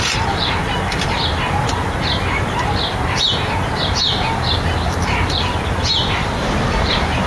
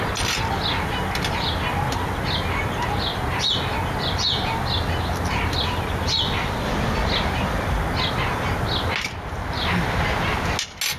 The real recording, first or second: second